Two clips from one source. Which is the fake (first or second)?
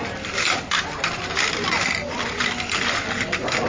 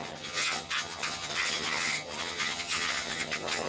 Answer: second